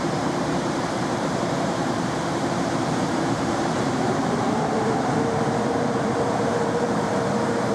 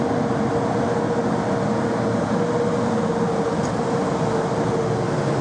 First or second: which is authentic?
second